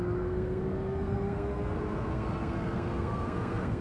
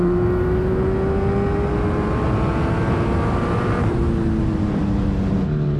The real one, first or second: second